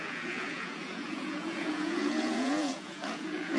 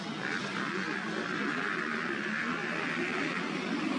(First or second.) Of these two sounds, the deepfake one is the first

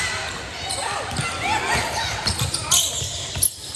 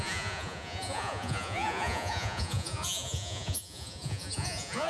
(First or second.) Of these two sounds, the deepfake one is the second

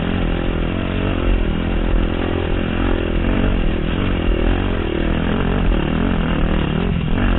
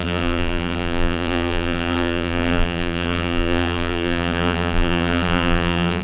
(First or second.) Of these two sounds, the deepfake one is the second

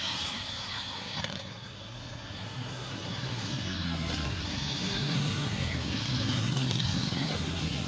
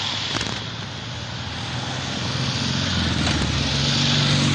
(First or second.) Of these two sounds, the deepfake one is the first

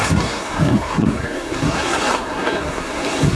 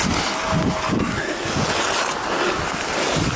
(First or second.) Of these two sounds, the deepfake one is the first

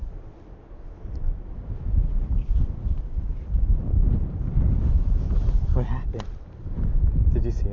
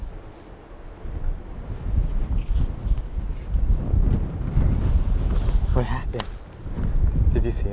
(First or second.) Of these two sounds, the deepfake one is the first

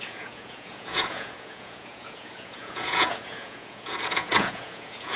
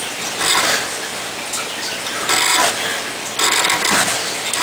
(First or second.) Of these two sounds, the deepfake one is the first